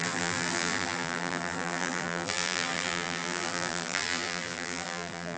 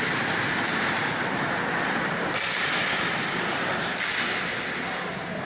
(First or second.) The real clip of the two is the second